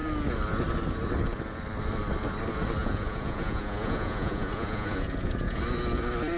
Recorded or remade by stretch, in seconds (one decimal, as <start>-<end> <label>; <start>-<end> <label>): 0.0-2.8 recorded; 2.8-5.6 remade; 5.6-6.4 recorded